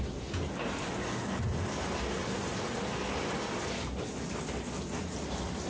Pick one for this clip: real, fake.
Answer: real